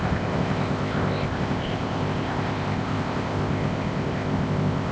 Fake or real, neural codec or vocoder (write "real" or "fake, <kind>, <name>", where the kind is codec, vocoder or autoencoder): fake, codec, ZipCodec